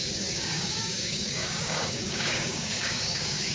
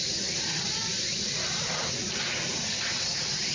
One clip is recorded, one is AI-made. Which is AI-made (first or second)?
first